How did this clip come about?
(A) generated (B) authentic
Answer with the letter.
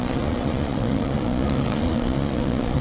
A